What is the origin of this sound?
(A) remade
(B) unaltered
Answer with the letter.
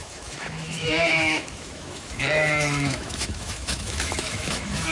A